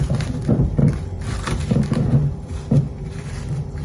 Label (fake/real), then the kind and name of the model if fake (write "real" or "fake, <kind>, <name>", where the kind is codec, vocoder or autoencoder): fake, vocoder, BigVGAN v2